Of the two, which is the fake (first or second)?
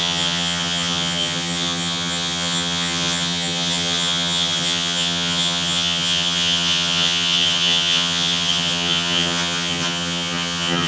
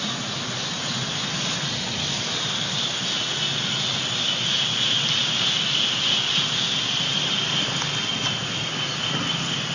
first